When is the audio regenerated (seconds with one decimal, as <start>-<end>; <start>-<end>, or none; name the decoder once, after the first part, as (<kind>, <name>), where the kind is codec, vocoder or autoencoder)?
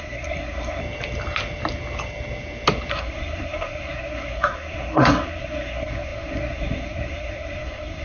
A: 0.0-0.8 (codec, SNAC); 2.9-8.0